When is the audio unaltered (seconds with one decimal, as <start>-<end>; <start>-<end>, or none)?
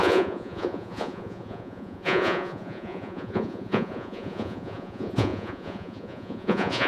none